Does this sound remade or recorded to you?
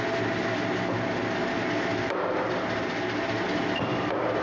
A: recorded